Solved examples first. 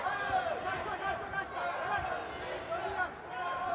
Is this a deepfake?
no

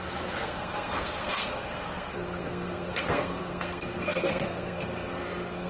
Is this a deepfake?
yes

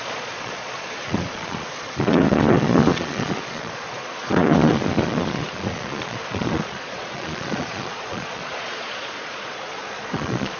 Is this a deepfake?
yes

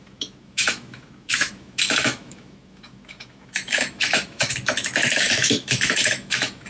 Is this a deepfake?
yes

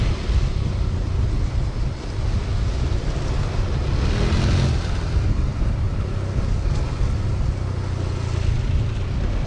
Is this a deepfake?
no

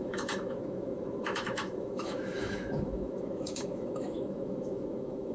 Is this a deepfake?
yes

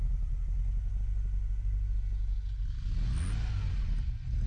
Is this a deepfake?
no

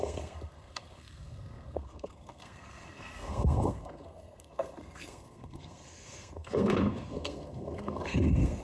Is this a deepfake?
yes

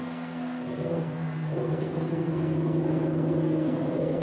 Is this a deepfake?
yes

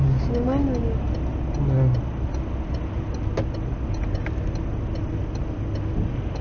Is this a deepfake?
no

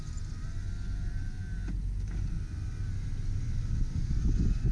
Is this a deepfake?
no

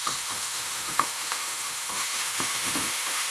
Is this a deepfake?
yes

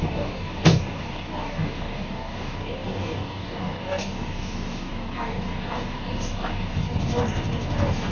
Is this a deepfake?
yes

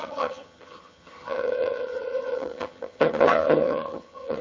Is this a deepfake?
yes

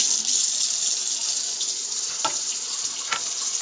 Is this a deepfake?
no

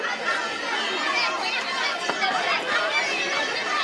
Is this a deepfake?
no